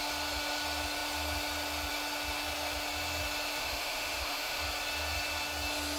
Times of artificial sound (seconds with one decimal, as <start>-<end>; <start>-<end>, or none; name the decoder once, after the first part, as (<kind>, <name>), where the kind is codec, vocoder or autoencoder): 3.6-4.6 (autoencoder, DAC-VAE)